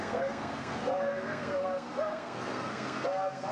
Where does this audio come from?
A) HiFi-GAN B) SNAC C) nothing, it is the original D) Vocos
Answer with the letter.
B